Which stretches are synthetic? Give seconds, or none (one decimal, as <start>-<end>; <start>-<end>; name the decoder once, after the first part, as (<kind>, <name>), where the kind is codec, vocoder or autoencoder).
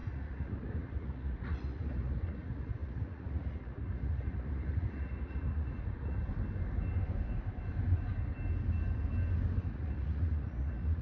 0.0-6.2 (vocoder, Vocos); 9.6-11.0